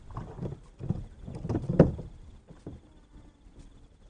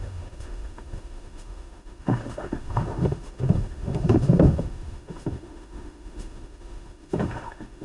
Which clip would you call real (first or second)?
first